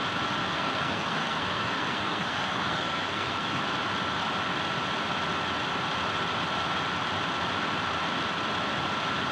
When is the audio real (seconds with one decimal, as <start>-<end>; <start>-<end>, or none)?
0.0-0.4; 3.6-9.3